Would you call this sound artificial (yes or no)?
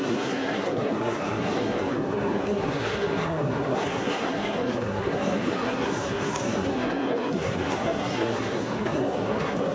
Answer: yes